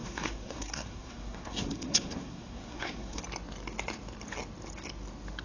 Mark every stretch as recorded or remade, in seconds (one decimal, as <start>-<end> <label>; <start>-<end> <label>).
0.0-3.2 remade; 3.2-5.4 recorded

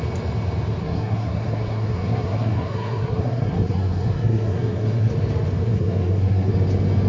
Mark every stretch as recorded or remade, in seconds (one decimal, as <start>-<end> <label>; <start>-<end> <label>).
0.0-0.8 recorded; 0.8-5.1 remade; 5.1-5.6 recorded; 5.6-6.5 remade; 6.5-7.1 recorded

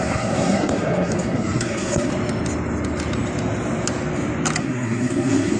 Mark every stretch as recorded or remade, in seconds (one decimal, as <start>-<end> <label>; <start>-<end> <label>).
0.0-2.1 remade; 2.1-4.6 recorded; 4.6-5.6 remade